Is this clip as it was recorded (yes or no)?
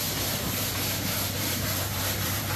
no